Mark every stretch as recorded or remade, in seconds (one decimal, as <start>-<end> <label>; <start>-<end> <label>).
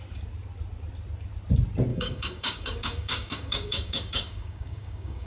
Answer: 0.0-1.9 recorded; 1.9-5.3 remade